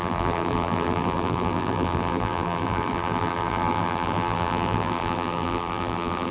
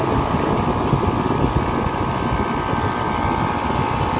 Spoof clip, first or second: first